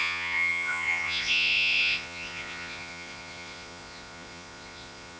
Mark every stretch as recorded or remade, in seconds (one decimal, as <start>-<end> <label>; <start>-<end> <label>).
0.0-5.2 remade